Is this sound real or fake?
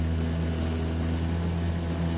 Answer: real